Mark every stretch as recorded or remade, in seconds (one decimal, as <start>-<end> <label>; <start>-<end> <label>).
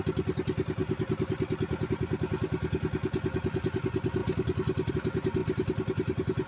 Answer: 0.0-6.5 recorded